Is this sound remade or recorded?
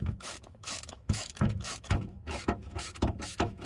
remade